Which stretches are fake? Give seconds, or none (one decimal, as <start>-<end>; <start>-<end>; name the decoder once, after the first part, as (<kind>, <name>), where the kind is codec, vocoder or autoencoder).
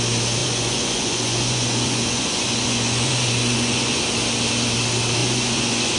0.4-4.0 (vocoder, Vocos); 5.2-6.0